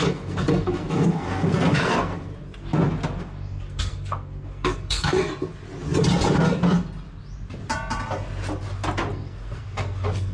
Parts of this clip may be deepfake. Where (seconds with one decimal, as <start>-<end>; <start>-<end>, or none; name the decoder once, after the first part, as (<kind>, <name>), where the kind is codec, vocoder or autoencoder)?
0.0-2.3 (codec, SNAC); 3.2-5.2; 9.1-10.3